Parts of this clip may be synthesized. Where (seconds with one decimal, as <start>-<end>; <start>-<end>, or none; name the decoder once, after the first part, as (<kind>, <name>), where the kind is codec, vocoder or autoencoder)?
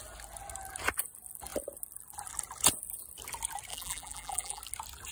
3.7-4.6 (vocoder, BigVGAN v2)